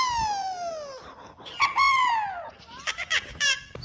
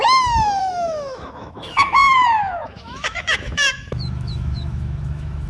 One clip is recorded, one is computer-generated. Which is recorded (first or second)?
first